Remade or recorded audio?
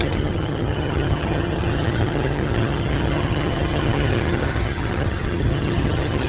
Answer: remade